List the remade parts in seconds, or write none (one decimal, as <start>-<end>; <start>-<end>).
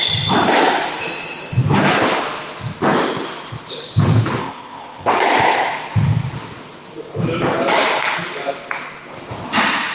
4.4-5.1